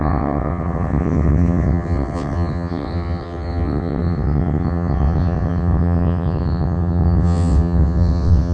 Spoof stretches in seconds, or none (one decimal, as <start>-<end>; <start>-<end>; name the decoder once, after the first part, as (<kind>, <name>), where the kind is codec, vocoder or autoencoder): 0.0-8.5 (vocoder, WaveNeXt)